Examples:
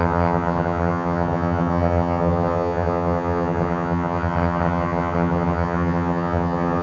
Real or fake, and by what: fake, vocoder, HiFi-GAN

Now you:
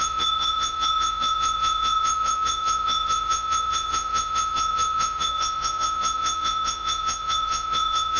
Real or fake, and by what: fake, vocoder, Vocos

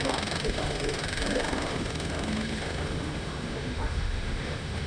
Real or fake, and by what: fake, autoencoder, DAC-VAE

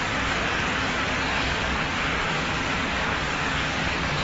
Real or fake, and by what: fake, codec, DAC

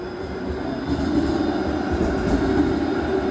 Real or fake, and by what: real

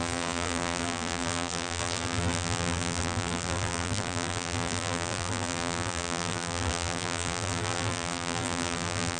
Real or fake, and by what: fake, vocoder, BigVGAN v2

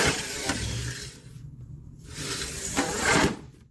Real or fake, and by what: real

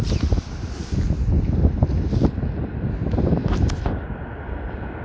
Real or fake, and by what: real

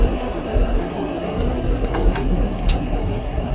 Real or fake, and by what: fake, codec, SNAC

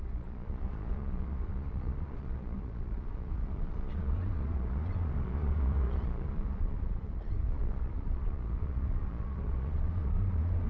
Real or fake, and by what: fake, vocoder, Vocos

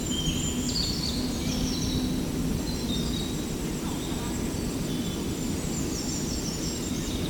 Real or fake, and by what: real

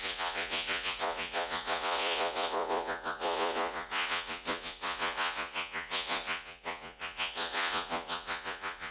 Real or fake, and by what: fake, vocoder, Vocos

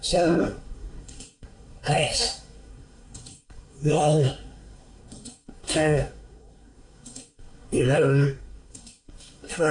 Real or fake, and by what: fake, codec, SNAC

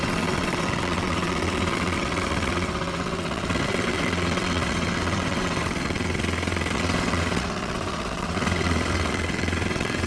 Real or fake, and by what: fake, vocoder, WaveNeXt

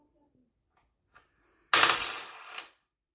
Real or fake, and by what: real